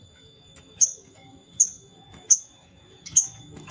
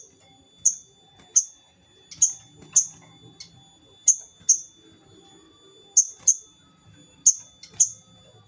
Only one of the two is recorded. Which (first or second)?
second